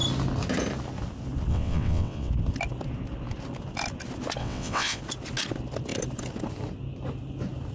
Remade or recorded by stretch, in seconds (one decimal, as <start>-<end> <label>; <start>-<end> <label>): 0.0-1.5 recorded; 1.5-2.3 remade; 2.3-4.4 recorded; 4.4-5.0 remade; 5.0-7.7 recorded